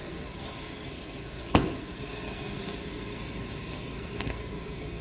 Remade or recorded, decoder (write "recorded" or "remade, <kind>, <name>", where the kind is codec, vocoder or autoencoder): remade, codec, SNAC